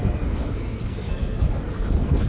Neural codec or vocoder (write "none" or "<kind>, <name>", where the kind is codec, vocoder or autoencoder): codec, SNAC